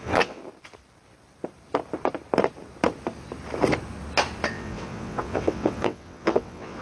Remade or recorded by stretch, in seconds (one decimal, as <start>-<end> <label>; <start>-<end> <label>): 0.0-0.4 remade; 0.4-4.5 recorded; 4.5-6.8 remade